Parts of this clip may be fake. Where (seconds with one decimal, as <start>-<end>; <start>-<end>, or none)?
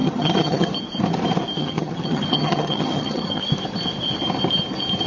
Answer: 0.0-0.7; 1.6-3.4